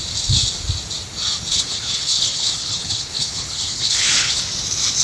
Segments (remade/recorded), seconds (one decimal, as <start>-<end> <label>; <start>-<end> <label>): 0.0-1.5 recorded; 1.5-4.4 remade; 4.4-5.0 recorded